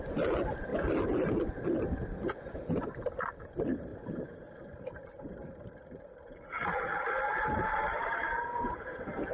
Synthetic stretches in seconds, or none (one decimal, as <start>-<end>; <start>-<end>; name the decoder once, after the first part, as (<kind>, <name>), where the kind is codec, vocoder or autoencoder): none